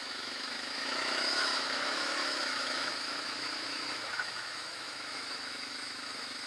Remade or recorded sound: remade